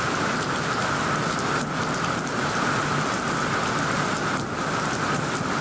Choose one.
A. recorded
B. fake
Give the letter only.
A